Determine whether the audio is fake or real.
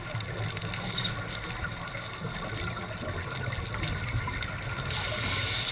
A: real